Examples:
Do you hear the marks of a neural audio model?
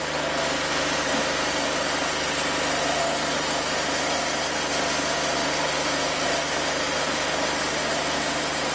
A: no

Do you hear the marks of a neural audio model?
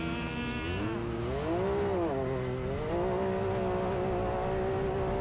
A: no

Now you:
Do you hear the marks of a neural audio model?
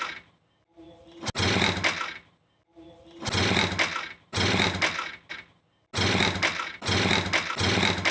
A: no